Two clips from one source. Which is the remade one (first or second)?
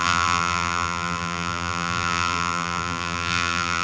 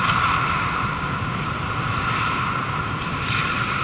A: first